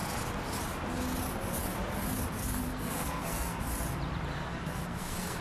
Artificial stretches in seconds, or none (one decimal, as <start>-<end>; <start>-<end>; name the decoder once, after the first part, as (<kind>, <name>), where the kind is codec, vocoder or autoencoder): 2.7-3.6 (codec, SNAC); 4.5-5.4